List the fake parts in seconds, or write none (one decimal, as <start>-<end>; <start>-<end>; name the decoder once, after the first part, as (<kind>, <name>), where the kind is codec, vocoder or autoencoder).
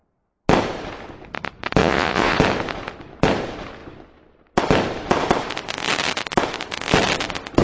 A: 1.8-2.4 (vocoder, Vocos)